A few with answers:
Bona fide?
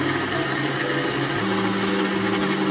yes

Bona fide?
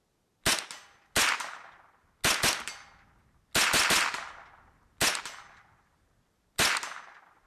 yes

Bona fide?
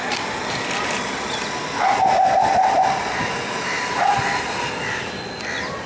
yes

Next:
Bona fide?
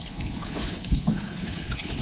no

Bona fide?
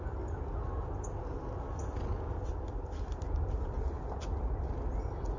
yes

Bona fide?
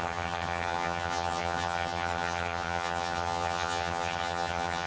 no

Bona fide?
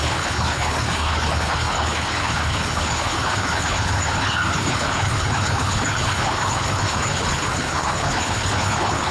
no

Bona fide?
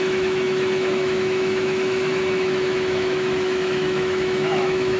no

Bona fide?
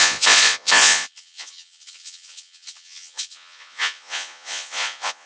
no